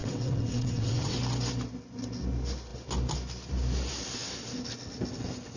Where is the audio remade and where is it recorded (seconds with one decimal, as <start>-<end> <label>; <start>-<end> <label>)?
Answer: 0.0-1.2 remade; 1.2-5.6 recorded